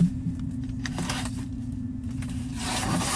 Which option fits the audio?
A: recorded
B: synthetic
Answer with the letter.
B